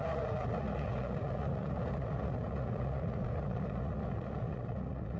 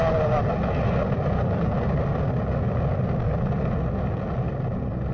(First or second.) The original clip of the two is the second